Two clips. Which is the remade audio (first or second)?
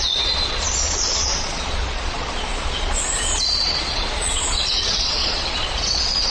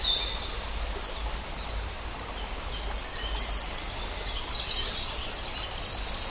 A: first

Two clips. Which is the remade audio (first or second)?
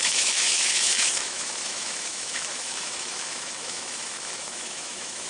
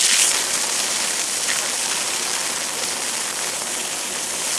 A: first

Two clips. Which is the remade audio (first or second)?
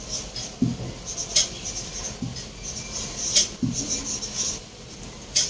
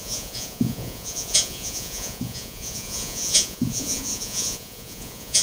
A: second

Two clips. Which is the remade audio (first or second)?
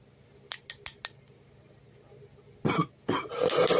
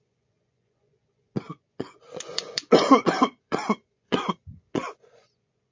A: second